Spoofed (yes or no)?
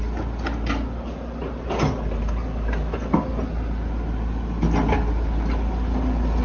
no